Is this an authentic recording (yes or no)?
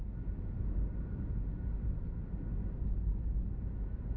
yes